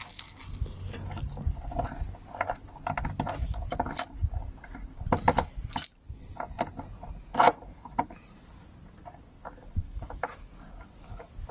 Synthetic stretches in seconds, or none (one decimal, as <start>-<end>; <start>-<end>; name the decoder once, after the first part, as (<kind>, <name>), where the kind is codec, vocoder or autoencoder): 9.8-10.5 (autoencoder, DAC-VAE)